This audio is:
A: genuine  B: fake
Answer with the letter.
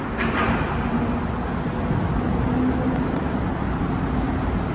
A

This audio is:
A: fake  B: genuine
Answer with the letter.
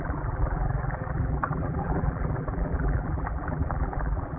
A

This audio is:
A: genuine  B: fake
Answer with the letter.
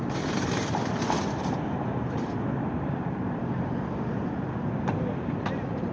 B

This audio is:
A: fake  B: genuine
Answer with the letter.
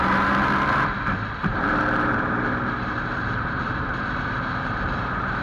A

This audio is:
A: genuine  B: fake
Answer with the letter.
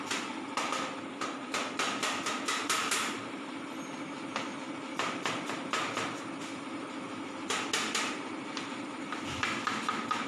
B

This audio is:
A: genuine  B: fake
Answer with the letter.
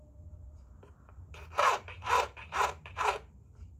B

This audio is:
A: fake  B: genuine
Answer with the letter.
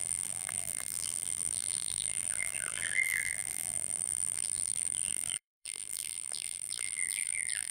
A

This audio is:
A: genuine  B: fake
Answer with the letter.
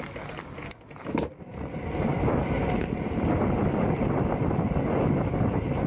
A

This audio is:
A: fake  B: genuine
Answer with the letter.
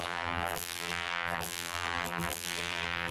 A